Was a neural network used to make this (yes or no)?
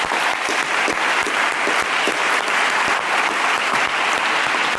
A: no